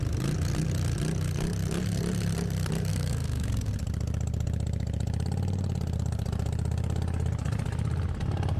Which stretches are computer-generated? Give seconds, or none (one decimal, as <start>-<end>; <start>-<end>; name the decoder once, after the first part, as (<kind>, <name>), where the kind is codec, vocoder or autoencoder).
2.9-3.7 (codec, DAC)